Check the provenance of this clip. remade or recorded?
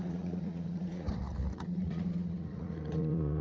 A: remade